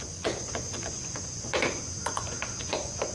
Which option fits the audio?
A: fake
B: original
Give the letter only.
A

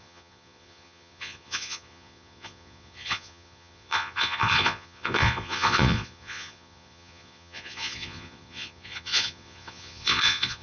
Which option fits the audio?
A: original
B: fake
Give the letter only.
B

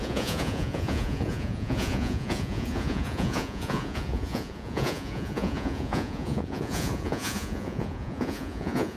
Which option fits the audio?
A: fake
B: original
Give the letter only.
A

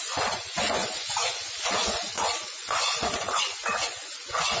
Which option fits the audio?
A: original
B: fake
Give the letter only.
B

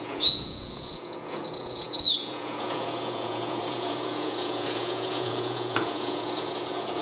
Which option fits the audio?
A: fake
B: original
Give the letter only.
A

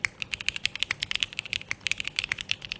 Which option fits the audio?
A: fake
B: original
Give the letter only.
B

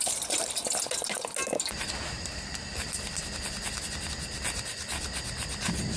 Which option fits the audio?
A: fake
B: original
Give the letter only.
B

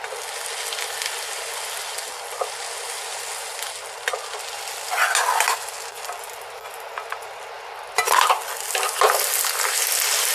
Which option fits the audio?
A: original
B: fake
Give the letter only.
A